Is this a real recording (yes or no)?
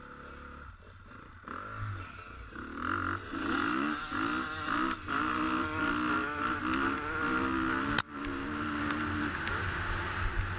yes